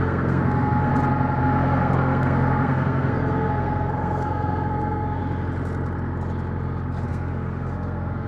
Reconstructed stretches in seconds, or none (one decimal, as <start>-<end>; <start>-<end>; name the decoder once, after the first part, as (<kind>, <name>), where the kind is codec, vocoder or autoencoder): 0.0-0.9 (codec, SNAC); 1.4-5.2; 7.1-8.3